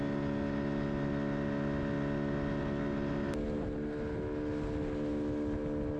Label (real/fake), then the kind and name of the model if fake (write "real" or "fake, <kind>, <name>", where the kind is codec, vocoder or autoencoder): real